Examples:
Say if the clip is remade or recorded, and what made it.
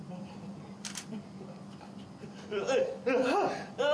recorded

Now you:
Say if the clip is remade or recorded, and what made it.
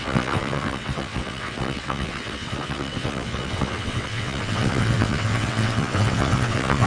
remade, vocoder, WaveNeXt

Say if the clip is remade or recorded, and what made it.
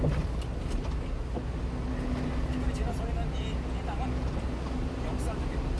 recorded